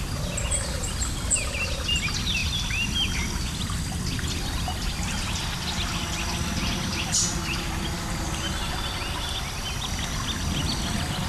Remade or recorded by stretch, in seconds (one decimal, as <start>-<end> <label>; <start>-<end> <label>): 0.0-11.3 recorded

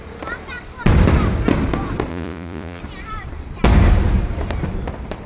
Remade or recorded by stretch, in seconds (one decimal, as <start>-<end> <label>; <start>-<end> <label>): 0.0-2.1 recorded; 2.1-2.8 remade; 2.8-5.3 recorded

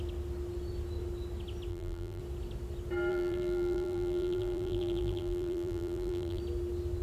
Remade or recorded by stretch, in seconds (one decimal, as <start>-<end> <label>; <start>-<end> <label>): 0.0-1.7 recorded; 1.7-2.2 remade; 2.2-3.1 recorded; 3.1-6.4 remade; 6.4-7.0 recorded